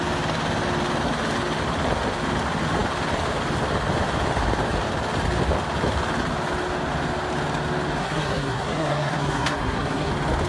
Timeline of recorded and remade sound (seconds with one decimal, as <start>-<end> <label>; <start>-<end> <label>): 0.0-8.0 recorded; 8.0-10.1 remade; 10.1-10.5 recorded